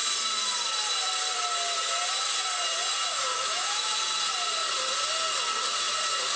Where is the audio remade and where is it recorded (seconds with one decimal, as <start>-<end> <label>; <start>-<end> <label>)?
0.0-3.3 recorded; 3.3-4.0 remade; 4.0-6.4 recorded